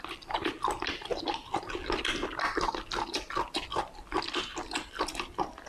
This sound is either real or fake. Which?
real